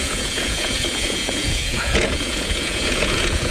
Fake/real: fake